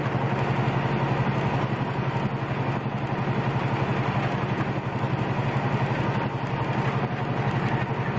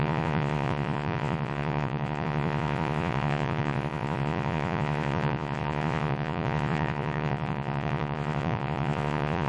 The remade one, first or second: second